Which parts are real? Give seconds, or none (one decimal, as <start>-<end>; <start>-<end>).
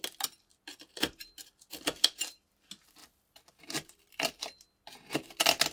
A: 0.0-0.5; 2.3-3.0; 5.3-5.7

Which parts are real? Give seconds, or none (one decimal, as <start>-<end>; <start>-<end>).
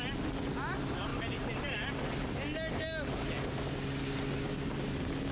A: 0.0-1.1; 1.9-5.3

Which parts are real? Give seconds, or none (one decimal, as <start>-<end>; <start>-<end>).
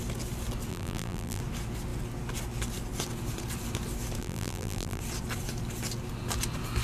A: 0.0-0.7; 1.4-4.2; 5.0-6.8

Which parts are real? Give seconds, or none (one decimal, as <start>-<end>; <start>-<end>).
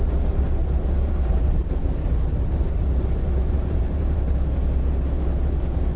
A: 0.0-0.6; 4.2-6.0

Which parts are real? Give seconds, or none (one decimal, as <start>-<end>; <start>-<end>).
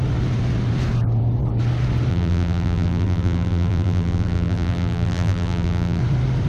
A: 0.0-2.1; 6.0-6.5